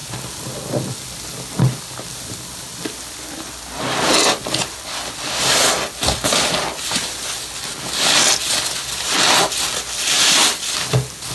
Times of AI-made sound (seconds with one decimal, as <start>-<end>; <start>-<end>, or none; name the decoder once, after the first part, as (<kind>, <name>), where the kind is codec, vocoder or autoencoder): none